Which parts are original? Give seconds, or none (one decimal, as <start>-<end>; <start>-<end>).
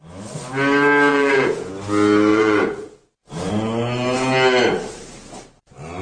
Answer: 0.0-1.1; 1.7-2.3; 3.5-6.0